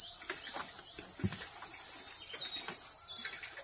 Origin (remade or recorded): recorded